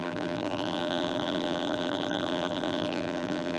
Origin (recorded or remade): remade